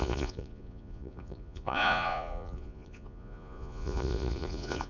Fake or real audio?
fake